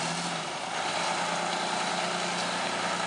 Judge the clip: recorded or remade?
recorded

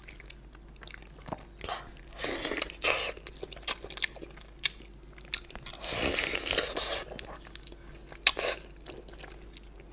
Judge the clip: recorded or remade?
recorded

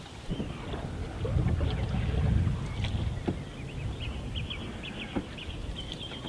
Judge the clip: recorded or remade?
recorded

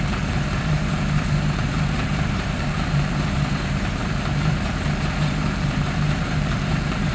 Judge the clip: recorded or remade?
remade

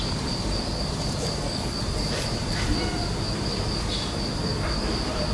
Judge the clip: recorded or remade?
remade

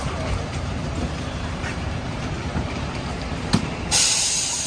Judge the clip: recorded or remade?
remade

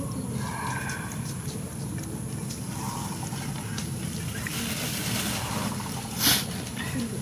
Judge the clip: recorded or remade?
recorded